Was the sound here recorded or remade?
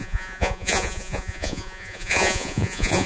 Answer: remade